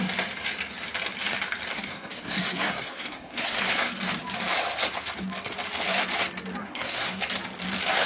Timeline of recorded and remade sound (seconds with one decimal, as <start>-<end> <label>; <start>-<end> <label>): 0.0-1.7 recorded; 1.7-3.9 remade; 3.9-6.6 recorded; 6.6-7.2 remade; 7.2-8.1 recorded